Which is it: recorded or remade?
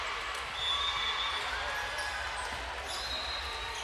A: recorded